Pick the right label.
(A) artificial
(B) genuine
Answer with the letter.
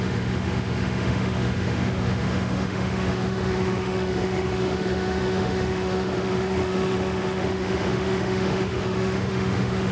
A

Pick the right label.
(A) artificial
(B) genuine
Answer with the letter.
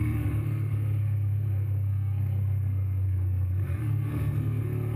A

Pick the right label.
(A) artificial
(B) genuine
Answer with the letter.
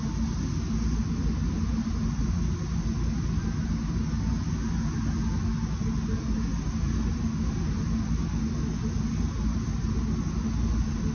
B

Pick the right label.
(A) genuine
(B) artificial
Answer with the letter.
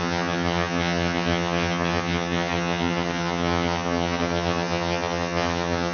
B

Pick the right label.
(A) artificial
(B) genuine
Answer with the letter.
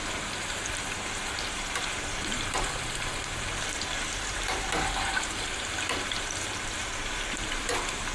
A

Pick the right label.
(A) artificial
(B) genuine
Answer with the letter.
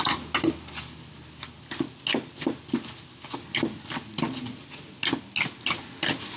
B